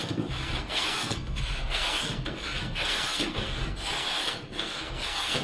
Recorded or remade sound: remade